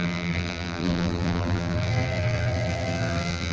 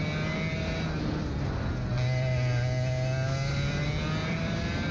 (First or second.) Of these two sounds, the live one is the second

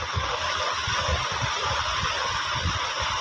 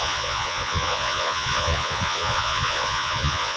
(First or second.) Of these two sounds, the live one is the first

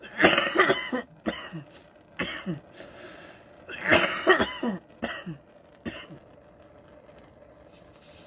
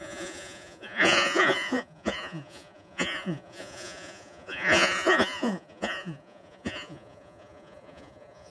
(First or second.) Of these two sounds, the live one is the first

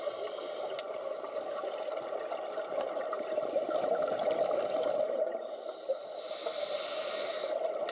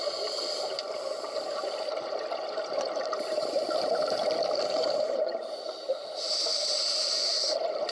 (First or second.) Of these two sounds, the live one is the first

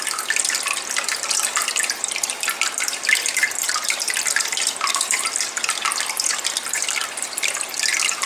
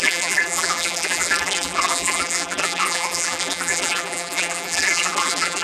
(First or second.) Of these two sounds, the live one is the first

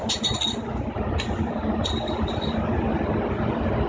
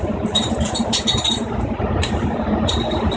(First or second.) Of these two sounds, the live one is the first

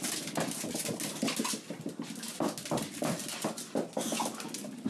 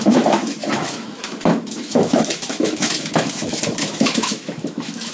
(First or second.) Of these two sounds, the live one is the first